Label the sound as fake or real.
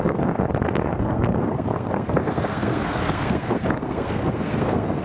fake